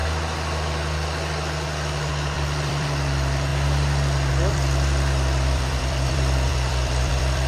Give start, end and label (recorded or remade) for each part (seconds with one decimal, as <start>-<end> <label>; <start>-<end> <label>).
0.0-2.1 recorded; 2.1-3.5 remade; 3.5-4.3 recorded; 4.3-7.5 remade